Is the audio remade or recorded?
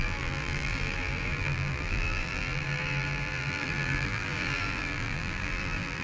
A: remade